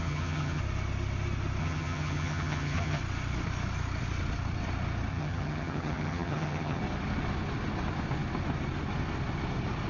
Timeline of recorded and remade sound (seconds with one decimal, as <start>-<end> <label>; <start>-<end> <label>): 0.0-0.6 remade; 0.6-1.6 recorded; 1.6-3.0 remade; 3.0-5.1 recorded; 5.1-6.8 remade; 6.8-9.9 recorded